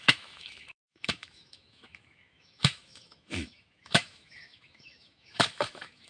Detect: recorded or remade remade